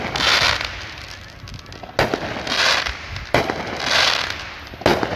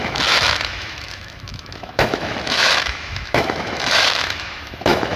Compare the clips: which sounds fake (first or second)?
second